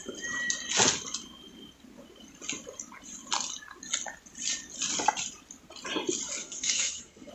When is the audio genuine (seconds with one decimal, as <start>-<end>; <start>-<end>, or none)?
0.0-6.4